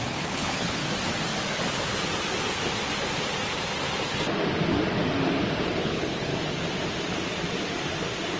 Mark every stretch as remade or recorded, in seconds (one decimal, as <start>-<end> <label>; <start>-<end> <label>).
0.0-0.8 remade; 0.8-5.8 recorded; 5.8-6.3 remade; 6.3-8.4 recorded